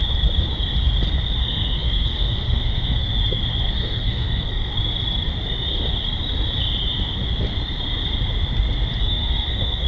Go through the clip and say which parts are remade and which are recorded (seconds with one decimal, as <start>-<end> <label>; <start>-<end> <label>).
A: 0.0-1.4 recorded; 1.4-3.1 remade; 3.1-3.6 recorded; 3.6-4.7 remade; 4.7-9.0 recorded; 9.0-9.9 remade